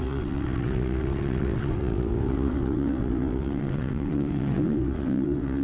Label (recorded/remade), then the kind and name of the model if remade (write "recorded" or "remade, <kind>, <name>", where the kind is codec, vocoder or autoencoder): remade, vocoder, WaveNeXt